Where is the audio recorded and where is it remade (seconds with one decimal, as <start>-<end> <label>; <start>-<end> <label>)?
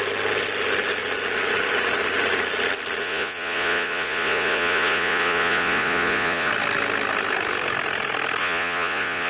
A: 0.0-3.0 recorded; 3.0-6.5 remade; 6.5-8.4 recorded; 8.4-9.3 remade